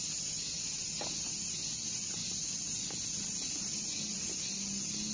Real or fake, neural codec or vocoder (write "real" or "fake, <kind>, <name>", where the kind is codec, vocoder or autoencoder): real